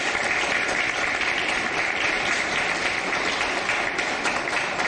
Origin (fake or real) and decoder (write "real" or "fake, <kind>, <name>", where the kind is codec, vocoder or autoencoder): real